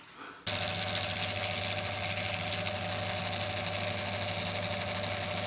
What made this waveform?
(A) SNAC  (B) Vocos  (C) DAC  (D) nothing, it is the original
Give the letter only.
D